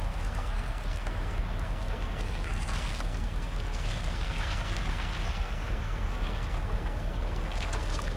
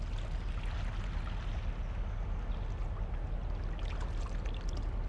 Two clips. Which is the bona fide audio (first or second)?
second